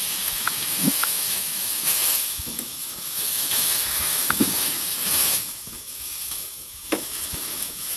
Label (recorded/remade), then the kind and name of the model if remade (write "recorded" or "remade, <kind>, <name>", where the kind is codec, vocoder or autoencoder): remade, autoencoder, DAC-VAE